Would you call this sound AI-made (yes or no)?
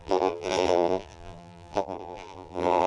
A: yes